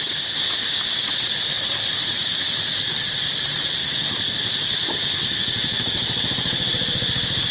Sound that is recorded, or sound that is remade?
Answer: recorded